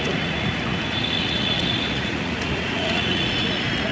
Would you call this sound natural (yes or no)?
no